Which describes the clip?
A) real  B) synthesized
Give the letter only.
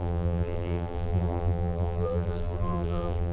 B